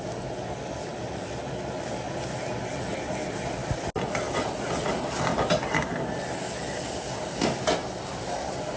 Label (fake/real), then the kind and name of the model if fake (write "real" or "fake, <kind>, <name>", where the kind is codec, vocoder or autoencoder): real